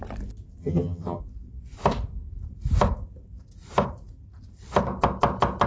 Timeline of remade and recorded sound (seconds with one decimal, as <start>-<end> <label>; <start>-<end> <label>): 0.0-0.6 recorded; 0.6-1.2 remade; 1.2-5.7 recorded